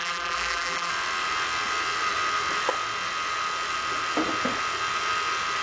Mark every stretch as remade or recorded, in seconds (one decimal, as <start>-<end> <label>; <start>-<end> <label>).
0.0-0.9 remade; 0.9-5.6 recorded